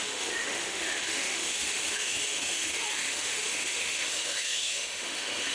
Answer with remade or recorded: remade